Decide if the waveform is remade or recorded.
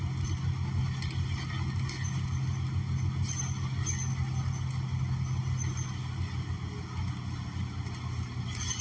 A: recorded